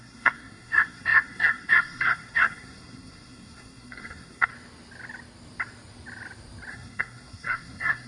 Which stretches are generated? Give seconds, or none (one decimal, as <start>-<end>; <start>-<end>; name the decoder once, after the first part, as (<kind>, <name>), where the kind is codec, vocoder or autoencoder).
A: 0.0-4.5 (codec, SNAC); 6.7-8.1